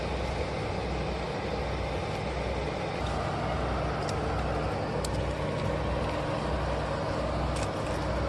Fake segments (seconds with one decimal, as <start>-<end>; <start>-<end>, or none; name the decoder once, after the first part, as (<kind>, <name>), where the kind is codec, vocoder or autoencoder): none